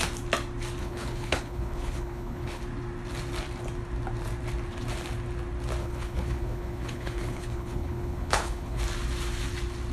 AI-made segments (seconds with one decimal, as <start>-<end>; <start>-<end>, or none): 0.8-2.6; 5.8-8.8

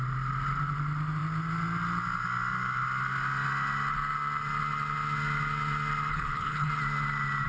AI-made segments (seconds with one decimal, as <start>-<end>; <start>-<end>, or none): 6.1-6.7